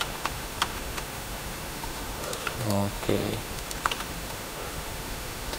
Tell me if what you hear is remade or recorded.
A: remade